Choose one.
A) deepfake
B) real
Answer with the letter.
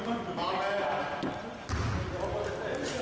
B